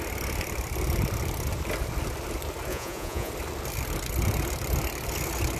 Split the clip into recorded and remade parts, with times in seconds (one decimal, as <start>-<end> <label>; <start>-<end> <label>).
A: 0.0-2.7 recorded; 2.7-3.3 remade; 3.3-5.6 recorded